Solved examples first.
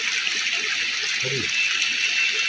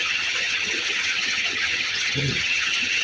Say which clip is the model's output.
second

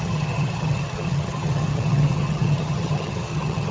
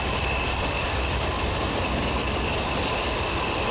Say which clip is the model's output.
first